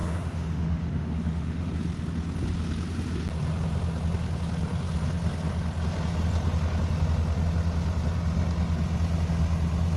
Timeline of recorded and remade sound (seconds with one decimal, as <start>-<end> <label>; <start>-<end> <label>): 0.0-1.7 remade; 1.7-10.0 recorded